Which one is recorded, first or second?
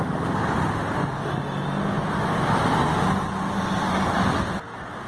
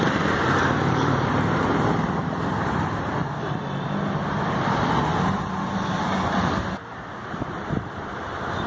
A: first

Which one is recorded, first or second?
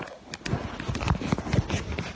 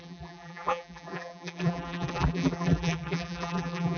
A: first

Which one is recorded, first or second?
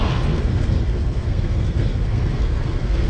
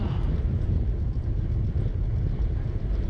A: second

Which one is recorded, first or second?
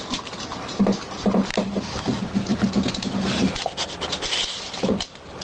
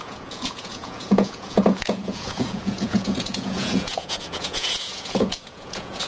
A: first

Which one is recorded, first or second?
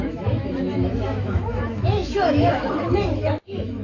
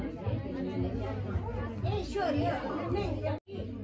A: second